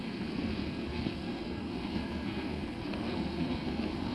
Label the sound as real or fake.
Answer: fake